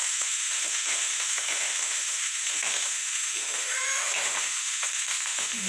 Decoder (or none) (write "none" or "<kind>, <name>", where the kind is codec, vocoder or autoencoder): autoencoder, DAC-VAE